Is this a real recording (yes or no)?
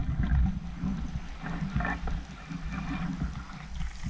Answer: yes